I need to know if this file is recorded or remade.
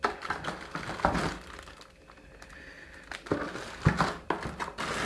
recorded